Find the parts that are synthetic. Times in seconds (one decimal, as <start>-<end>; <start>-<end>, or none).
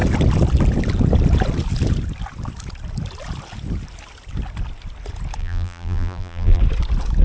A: 5.4-6.6